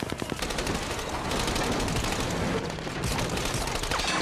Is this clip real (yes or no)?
yes